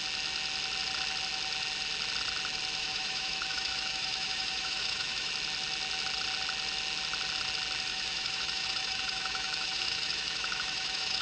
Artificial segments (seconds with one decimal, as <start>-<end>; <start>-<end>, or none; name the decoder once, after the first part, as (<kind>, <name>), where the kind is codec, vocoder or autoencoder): 2.8-5.3 (autoencoder, DAC-VAE); 7.9-11.2